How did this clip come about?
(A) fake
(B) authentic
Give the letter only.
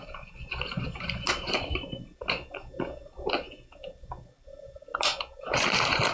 B